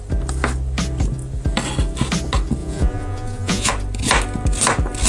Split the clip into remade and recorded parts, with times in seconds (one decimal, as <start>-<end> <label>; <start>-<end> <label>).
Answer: 0.0-2.6 recorded; 2.6-3.7 remade; 3.7-5.1 recorded